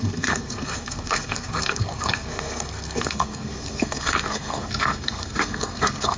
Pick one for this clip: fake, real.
fake